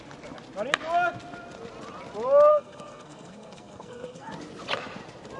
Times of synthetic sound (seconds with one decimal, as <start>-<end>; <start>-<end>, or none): 2.5-4.3